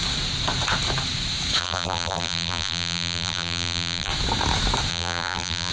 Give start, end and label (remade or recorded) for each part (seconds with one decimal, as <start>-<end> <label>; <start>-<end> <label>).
0.0-1.6 recorded; 1.6-4.1 remade; 4.1-4.9 recorded; 4.9-5.7 remade